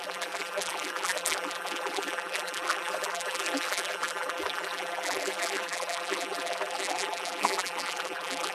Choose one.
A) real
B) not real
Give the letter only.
B